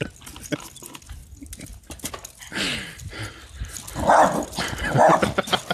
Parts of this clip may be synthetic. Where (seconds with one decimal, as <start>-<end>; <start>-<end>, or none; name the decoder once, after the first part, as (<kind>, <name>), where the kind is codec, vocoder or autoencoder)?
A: none